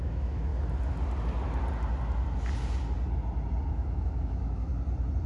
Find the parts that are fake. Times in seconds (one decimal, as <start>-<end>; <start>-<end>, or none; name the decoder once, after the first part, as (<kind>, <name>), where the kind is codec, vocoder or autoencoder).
0.0-0.5 (autoencoder, DAC-VAE); 3.7-4.7